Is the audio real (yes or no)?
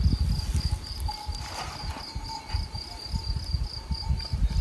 yes